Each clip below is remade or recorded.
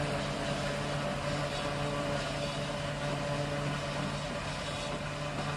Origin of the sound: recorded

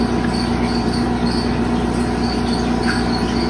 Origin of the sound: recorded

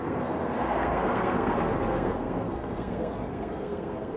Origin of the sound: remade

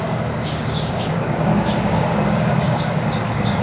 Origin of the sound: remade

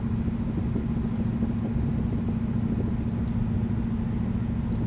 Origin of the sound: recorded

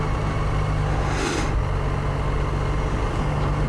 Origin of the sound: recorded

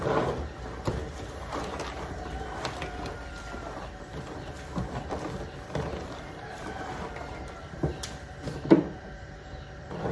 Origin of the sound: remade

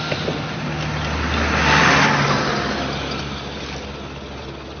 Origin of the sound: recorded